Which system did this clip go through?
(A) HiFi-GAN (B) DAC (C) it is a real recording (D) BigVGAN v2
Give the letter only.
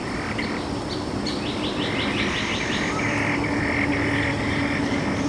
C